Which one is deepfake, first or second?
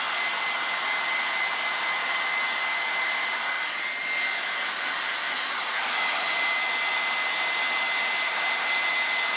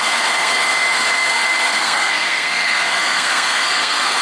second